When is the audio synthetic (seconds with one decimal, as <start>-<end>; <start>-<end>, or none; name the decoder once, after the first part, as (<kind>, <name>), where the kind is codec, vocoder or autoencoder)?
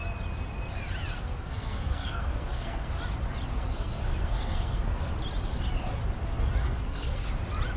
1.1-2.9 (codec, SNAC); 3.5-5.1; 6.6-7.3